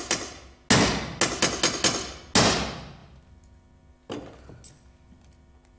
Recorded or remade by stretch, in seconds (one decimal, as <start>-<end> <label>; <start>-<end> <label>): 0.0-5.8 recorded